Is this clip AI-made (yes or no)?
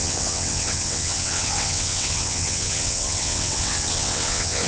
yes